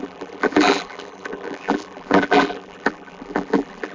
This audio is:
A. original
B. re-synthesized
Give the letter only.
B